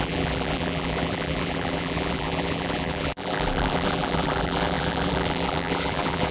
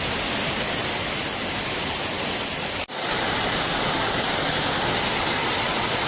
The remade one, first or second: first